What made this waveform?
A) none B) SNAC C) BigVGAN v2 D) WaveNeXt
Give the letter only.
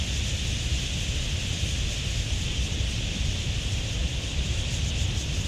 A